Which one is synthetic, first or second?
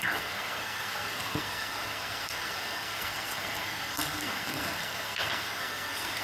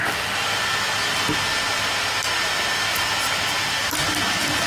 first